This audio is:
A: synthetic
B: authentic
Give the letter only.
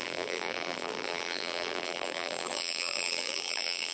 A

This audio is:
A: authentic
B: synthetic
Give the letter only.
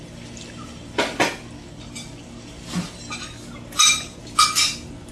A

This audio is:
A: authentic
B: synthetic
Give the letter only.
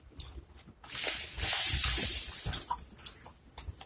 A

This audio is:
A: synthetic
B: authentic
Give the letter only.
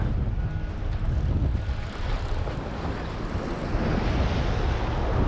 B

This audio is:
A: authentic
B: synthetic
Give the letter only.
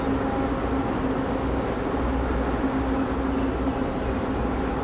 A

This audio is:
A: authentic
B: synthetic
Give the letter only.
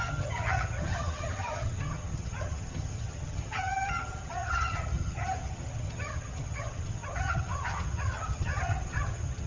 B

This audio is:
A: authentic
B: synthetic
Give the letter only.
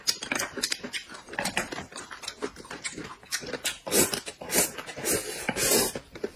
B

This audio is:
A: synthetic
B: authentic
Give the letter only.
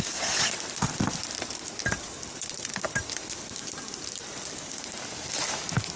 B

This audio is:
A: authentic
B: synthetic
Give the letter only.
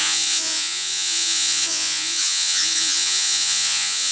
B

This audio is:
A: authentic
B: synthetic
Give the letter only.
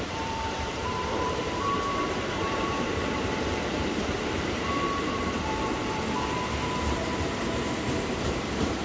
B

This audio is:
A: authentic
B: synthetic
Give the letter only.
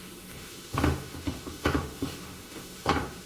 B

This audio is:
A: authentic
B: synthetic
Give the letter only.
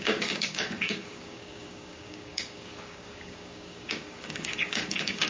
B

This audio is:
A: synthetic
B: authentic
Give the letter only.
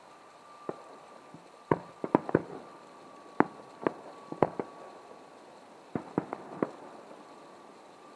B